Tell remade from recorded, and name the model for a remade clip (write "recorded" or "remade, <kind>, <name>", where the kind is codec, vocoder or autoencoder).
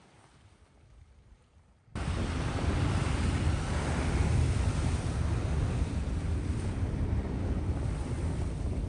recorded